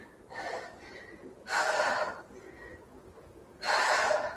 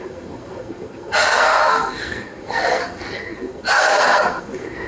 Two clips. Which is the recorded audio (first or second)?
first